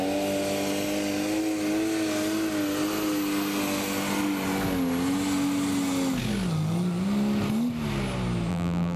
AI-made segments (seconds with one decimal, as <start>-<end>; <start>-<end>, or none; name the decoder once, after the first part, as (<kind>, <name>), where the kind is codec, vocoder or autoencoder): 8.5-9.0 (vocoder, BigVGAN v2)